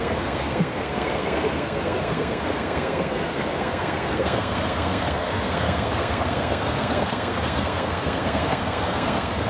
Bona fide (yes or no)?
no